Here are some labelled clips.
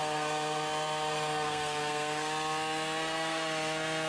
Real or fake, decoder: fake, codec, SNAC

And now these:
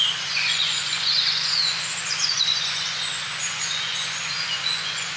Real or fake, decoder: fake, vocoder, Vocos